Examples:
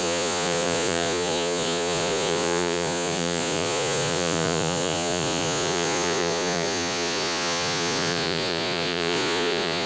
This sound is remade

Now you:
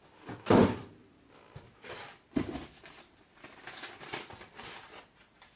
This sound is recorded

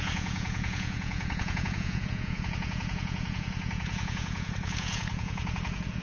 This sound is remade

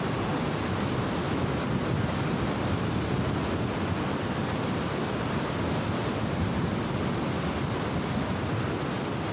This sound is recorded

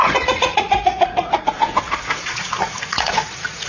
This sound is remade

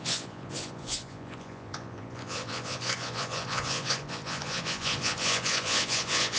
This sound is remade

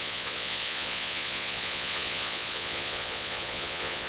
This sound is remade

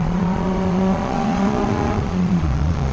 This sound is remade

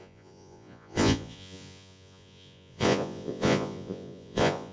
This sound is remade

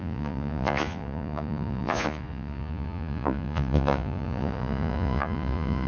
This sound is remade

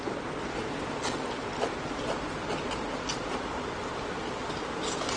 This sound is recorded